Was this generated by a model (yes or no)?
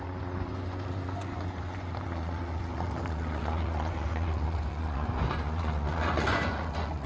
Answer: yes